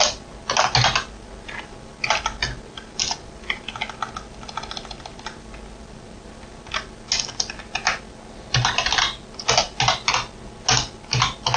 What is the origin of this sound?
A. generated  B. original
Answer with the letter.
B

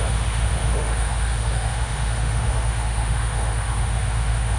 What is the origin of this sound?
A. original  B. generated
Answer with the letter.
B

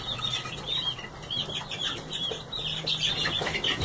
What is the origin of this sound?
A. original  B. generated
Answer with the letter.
A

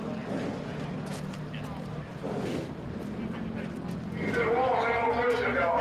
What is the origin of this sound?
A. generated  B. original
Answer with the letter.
B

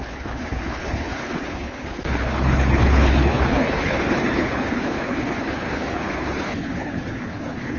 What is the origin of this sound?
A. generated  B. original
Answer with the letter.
A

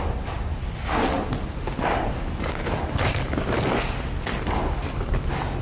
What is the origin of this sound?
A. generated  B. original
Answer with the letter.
B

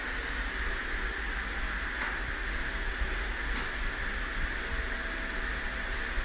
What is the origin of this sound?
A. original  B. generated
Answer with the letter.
A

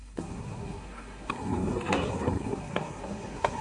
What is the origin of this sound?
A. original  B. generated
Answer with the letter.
B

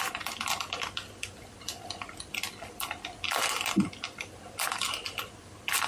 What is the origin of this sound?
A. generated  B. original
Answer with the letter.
B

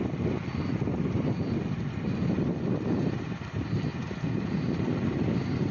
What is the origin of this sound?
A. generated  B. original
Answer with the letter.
B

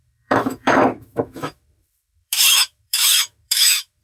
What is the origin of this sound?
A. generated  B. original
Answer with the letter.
A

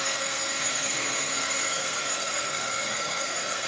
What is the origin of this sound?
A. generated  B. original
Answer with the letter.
A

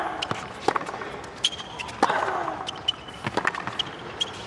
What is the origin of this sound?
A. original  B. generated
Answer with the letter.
A